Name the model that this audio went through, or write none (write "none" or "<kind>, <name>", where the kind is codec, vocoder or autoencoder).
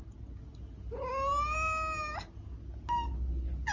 none